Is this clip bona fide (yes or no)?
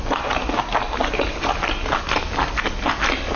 yes